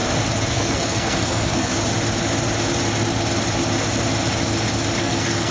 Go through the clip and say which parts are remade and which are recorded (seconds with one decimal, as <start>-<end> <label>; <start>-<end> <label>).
0.0-0.5 recorded; 0.5-1.7 remade; 1.7-5.0 recorded; 5.0-5.5 remade